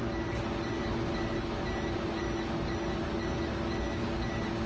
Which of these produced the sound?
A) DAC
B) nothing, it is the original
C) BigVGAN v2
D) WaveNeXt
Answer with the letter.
B